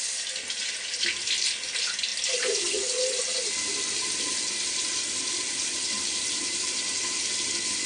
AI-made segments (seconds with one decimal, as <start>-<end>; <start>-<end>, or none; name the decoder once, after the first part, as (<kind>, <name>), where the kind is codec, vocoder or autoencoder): none